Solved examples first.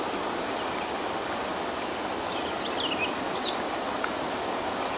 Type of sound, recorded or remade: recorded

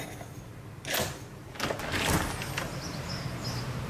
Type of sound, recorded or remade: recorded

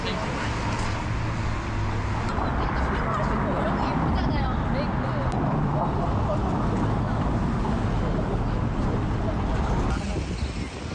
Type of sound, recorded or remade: recorded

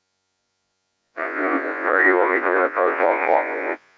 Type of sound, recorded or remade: remade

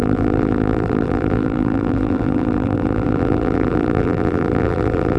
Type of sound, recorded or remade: remade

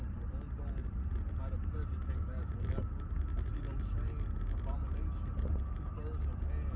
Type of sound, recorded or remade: recorded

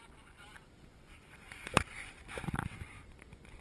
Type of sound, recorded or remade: remade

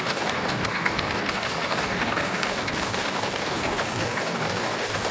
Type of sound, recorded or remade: remade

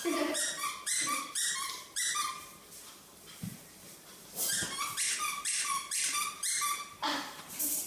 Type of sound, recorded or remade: remade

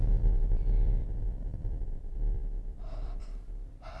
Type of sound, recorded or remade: remade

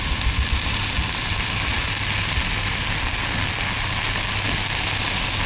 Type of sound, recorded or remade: recorded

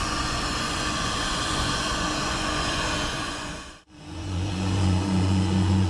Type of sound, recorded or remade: remade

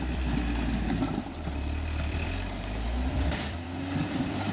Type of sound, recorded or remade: remade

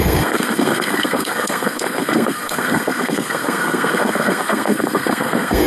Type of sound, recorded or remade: remade